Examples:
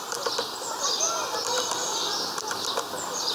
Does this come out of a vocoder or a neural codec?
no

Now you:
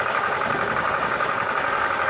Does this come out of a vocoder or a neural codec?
yes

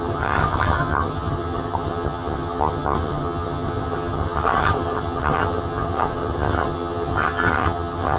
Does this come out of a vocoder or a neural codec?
yes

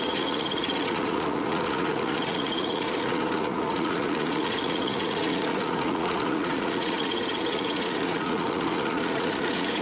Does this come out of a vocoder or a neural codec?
yes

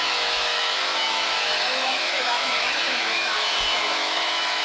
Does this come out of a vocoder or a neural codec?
yes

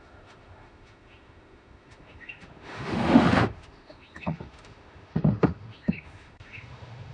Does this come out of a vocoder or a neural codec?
yes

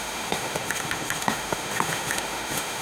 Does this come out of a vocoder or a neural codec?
yes